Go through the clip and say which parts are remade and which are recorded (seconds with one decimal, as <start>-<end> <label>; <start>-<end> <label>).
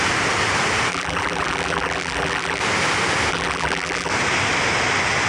0.0-0.9 recorded; 0.9-2.6 remade; 2.6-3.3 recorded; 3.3-4.1 remade; 4.1-5.3 recorded